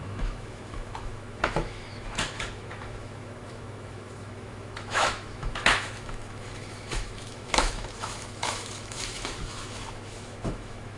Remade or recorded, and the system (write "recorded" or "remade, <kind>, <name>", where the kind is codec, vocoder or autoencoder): remade, autoencoder, DAC-VAE